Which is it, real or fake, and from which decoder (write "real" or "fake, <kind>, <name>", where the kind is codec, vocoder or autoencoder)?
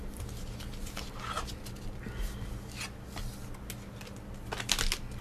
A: real